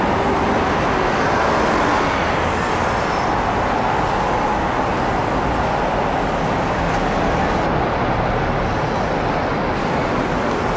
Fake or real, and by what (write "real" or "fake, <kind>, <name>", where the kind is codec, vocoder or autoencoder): real